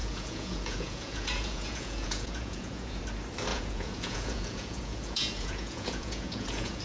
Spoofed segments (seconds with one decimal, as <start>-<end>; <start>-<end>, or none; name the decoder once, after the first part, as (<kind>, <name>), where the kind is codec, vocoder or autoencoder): 0.0-3.0 (vocoder, Vocos); 3.5-6.8